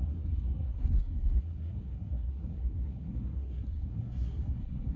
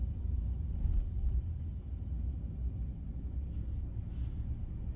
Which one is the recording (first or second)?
second